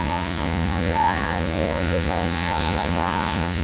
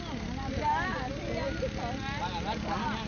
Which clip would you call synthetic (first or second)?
first